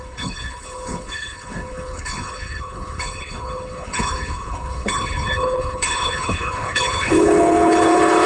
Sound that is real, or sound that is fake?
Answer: fake